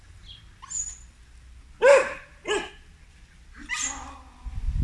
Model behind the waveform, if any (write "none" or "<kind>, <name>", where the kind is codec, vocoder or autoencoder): none